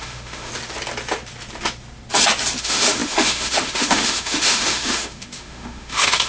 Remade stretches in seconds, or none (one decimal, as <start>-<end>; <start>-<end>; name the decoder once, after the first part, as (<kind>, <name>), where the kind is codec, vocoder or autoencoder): 0.0-0.5 (autoencoder, DAC-VAE); 2.6-6.3